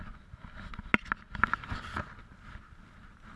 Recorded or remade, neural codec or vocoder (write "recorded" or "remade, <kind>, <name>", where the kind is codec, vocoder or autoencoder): recorded